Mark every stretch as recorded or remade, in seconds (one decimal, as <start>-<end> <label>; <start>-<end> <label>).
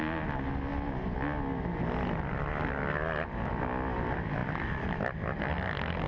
0.0-6.1 recorded